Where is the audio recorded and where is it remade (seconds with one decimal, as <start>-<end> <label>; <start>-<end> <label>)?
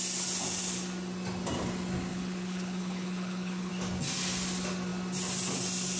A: 0.0-2.1 recorded; 2.1-3.7 remade; 3.7-6.0 recorded